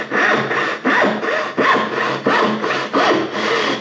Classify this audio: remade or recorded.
recorded